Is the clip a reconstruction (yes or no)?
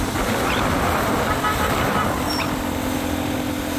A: no